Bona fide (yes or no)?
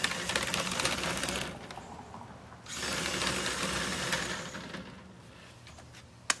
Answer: yes